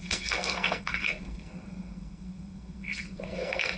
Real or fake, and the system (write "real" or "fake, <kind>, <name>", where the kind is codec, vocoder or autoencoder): fake, codec, SNAC